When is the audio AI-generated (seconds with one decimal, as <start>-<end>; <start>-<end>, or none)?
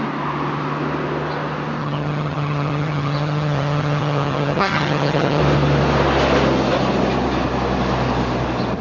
1.8-5.4